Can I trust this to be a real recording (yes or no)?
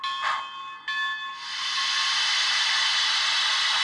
yes